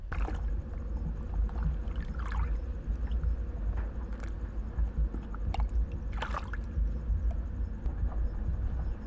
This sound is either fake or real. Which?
real